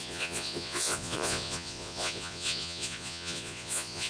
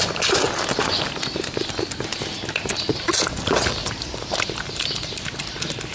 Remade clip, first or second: first